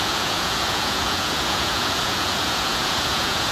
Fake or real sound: fake